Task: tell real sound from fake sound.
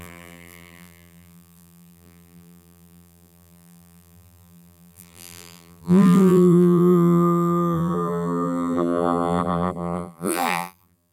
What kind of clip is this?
fake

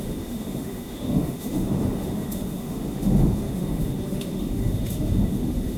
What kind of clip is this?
fake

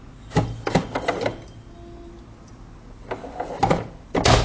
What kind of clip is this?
real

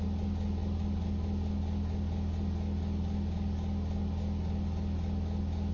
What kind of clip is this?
real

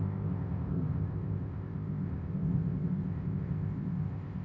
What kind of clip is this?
fake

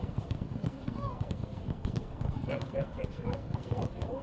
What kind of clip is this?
fake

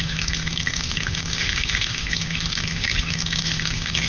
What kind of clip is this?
fake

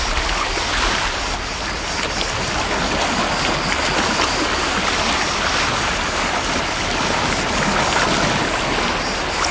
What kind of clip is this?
real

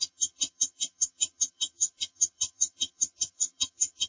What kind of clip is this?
fake